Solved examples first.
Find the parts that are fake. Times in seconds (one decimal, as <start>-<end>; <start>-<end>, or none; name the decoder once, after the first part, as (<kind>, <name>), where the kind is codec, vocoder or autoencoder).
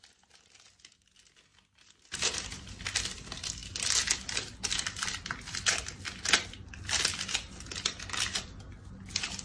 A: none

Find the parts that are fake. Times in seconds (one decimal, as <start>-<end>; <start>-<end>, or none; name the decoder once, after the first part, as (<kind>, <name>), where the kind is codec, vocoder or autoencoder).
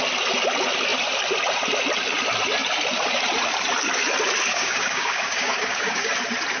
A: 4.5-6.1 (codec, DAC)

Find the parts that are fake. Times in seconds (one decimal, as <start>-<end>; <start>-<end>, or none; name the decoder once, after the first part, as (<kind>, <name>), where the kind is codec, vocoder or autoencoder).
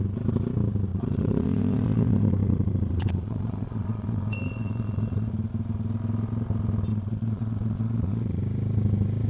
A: 0.9-5.3 (vocoder, Vocos); 6.9-8.4